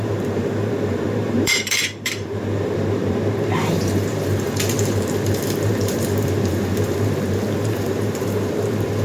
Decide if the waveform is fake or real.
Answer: fake